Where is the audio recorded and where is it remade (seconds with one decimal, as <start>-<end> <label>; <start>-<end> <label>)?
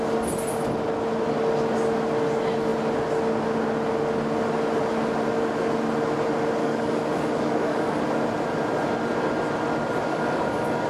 0.0-6.6 recorded; 6.6-8.0 remade; 8.0-10.1 recorded; 10.1-10.9 remade